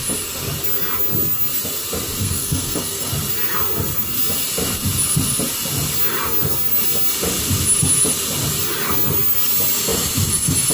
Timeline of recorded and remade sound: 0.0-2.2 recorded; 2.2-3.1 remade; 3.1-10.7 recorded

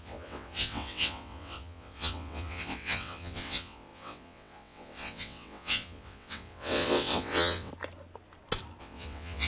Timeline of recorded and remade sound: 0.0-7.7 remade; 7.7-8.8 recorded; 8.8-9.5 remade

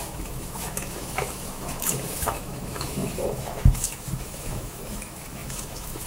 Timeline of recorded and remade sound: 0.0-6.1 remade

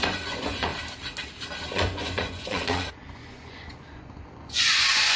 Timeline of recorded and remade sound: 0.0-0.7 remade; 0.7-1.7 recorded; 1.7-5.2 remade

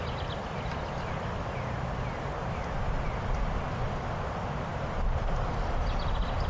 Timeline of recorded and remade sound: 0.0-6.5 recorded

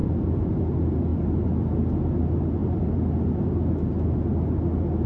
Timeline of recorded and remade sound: 0.0-0.6 remade; 0.6-2.6 recorded; 2.6-3.1 remade; 3.1-5.1 recorded

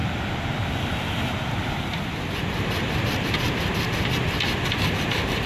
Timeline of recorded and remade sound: 0.0-5.5 recorded